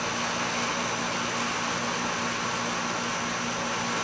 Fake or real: real